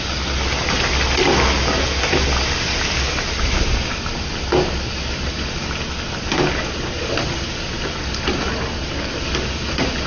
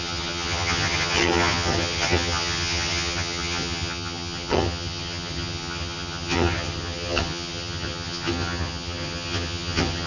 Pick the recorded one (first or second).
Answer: first